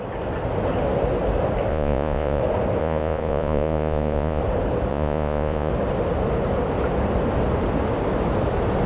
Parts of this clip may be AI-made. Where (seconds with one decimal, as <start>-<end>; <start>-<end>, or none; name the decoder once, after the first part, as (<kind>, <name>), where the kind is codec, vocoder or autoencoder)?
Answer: 1.7-2.4 (vocoder, Vocos); 2.8-4.4; 4.9-5.7